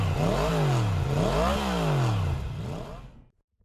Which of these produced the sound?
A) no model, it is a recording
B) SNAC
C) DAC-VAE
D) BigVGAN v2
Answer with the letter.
A